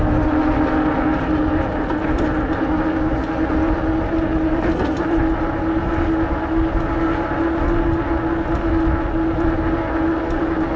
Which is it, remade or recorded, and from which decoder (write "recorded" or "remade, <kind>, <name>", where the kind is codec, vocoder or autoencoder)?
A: recorded